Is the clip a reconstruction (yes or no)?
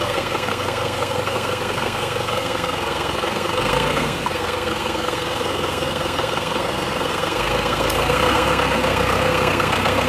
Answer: yes